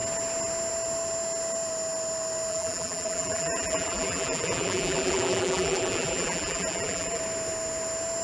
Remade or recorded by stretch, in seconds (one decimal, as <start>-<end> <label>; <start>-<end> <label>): 0.0-2.5 recorded; 2.5-7.2 remade; 7.2-8.2 recorded